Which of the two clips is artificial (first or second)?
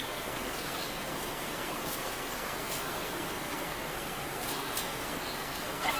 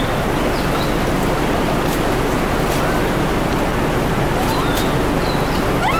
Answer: first